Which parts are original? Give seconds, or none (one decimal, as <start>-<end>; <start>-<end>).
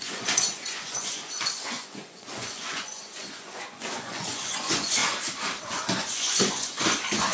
5.0-5.6